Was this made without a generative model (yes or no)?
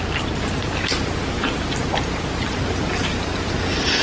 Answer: yes